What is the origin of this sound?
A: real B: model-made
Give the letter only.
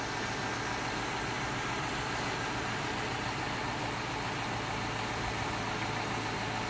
A